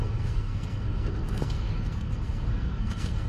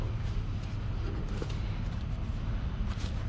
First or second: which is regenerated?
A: first